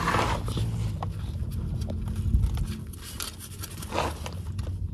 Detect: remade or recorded recorded